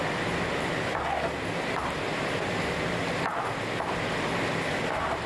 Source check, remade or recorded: recorded